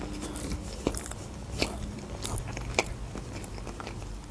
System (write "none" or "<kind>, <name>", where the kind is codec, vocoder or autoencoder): none